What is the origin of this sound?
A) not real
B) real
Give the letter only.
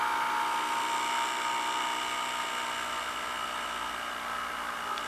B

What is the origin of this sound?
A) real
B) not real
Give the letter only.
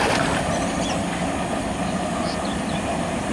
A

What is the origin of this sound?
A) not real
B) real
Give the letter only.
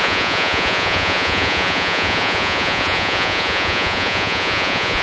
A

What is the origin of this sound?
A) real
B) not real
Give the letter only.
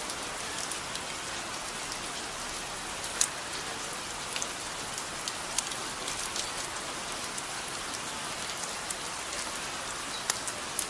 A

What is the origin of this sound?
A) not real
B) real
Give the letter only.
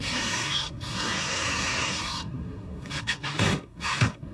A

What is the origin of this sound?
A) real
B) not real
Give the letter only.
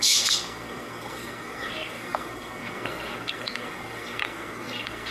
B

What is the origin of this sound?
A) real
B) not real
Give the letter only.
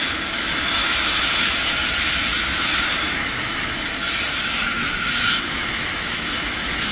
B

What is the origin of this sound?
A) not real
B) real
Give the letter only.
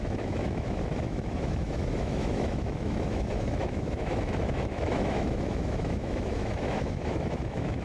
A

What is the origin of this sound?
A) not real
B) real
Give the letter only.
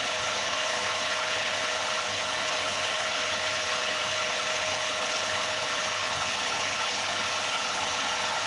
A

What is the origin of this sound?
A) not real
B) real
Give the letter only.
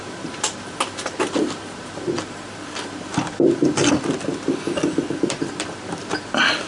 A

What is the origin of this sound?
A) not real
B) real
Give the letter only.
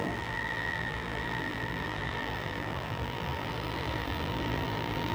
A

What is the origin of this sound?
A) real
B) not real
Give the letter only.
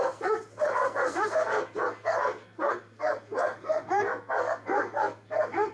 B